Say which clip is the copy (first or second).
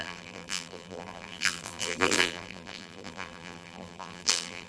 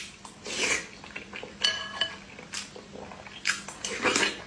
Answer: first